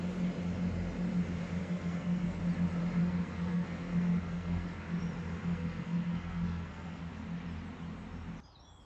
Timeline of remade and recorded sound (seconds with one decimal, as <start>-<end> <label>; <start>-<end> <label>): 0.0-1.6 recorded; 1.6-2.4 remade; 2.4-3.0 recorded; 3.0-5.0 remade; 5.0-5.4 recorded; 5.4-7.0 remade; 7.0-8.9 recorded